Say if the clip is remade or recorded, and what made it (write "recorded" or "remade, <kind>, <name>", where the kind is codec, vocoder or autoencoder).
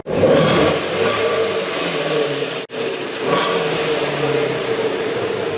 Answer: remade, vocoder, BigVGAN v2